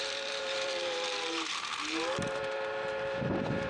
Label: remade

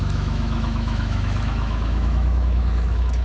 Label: remade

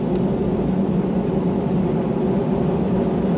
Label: recorded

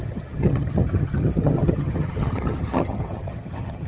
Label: remade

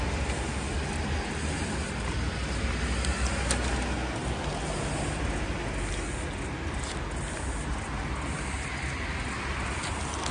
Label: recorded